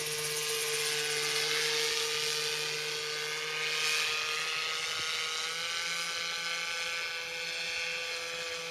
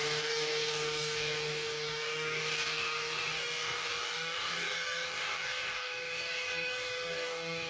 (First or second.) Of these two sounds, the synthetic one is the second